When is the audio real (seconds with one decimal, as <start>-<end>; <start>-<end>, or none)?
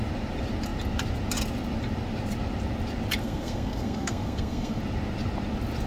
0.0-3.2; 4.8-5.9